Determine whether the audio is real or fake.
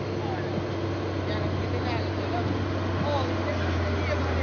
real